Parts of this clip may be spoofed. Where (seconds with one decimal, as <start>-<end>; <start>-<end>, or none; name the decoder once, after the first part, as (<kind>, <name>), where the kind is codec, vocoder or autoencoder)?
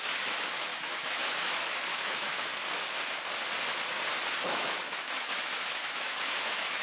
0.0-2.6 (autoencoder, DAC-VAE); 4.5-6.8